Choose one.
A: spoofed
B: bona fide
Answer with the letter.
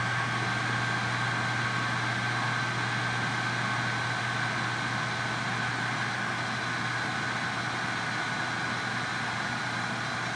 B